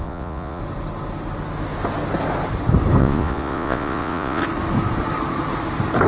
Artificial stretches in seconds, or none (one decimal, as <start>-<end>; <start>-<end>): 0.0-0.6; 3.0-4.4